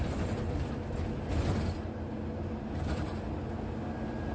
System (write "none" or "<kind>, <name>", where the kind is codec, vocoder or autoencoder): none